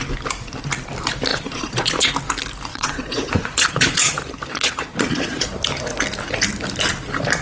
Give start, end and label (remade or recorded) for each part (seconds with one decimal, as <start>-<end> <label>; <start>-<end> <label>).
0.0-1.3 recorded; 1.3-2.1 remade; 2.1-2.7 recorded; 2.7-4.1 remade; 4.1-4.5 recorded; 4.5-5.5 remade; 5.5-7.4 recorded